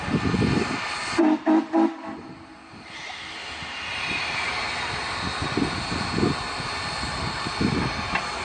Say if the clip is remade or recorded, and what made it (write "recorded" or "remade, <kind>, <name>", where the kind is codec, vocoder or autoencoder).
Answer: recorded